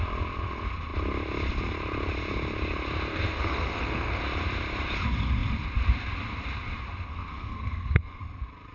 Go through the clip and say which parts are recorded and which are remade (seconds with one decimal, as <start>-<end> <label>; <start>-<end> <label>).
0.0-3.1 recorded; 3.1-4.2 remade; 4.2-7.1 recorded; 7.1-8.2 remade; 8.2-8.7 recorded